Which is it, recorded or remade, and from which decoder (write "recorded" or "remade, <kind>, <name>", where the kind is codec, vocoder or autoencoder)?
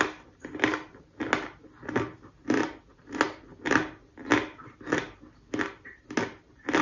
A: recorded